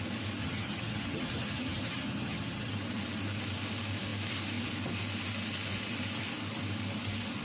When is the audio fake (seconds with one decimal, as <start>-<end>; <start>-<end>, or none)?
0.4-2.7